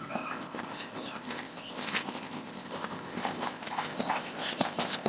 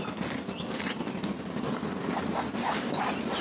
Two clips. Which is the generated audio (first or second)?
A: first